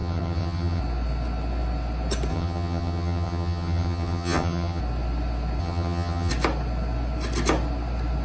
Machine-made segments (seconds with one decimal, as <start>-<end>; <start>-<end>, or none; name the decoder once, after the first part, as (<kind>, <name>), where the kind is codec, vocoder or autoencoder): 0.0-0.8 (vocoder, HiFi-GAN); 2.3-4.8; 5.6-6.3